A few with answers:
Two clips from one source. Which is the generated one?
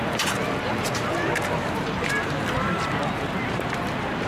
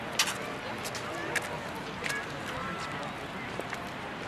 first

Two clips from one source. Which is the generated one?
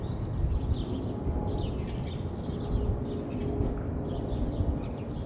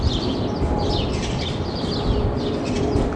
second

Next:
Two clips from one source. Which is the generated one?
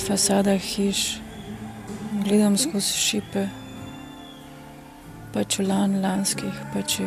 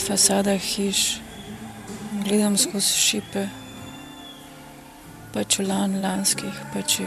second